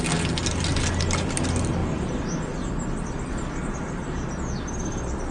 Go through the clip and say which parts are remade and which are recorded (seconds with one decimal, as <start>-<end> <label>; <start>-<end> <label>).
0.0-5.3 recorded